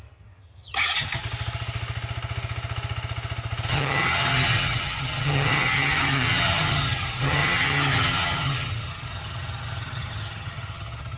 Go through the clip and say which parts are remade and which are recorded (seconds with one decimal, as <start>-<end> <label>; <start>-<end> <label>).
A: 0.0-1.2 remade; 1.2-3.7 recorded; 3.7-11.2 remade